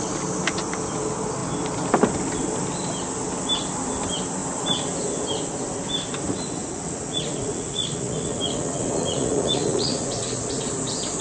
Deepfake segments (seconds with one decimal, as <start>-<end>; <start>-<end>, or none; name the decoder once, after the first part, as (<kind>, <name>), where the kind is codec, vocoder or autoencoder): 6.3-10.7 (vocoder, Vocos)